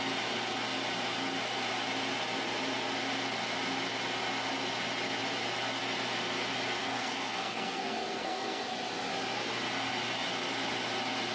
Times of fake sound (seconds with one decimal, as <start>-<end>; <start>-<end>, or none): 6.8-8.6